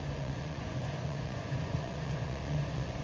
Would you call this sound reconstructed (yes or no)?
yes